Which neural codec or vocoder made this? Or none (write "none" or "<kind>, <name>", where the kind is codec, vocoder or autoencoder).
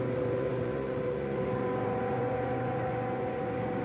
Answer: vocoder, Vocos